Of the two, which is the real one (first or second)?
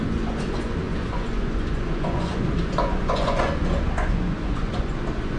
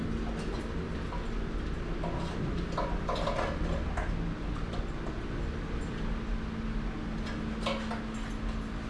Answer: second